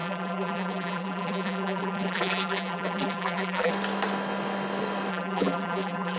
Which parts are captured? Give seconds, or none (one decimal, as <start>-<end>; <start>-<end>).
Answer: 3.7-5.1

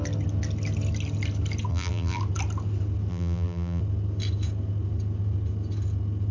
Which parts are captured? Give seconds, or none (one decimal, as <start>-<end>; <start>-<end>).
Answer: 0.0-1.7; 2.2-3.1; 3.8-6.3

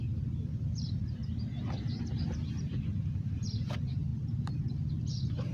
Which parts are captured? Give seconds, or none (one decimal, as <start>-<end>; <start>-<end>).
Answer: 1.2-2.0; 4.1-5.0

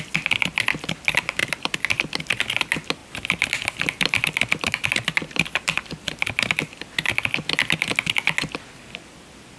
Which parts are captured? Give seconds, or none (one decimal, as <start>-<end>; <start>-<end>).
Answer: 0.0-3.0; 6.5-9.6

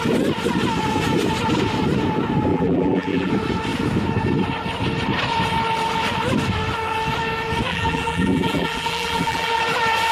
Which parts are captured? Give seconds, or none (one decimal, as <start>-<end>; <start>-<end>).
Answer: 0.0-2.5; 3.3-7.7; 9.6-10.1

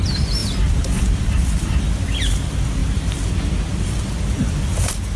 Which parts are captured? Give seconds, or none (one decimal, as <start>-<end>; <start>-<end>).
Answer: 2.8-4.0